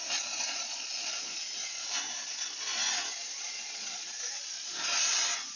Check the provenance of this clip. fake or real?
fake